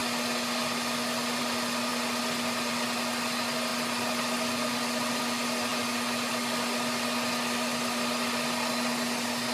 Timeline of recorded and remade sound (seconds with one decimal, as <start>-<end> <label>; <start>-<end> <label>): 0.0-9.5 recorded